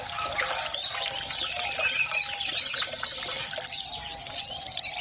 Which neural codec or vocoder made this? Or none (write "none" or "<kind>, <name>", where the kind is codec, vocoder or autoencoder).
none